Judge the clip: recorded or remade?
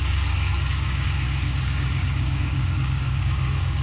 remade